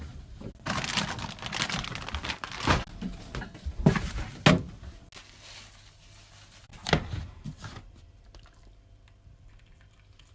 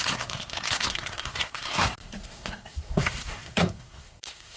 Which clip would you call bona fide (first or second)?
first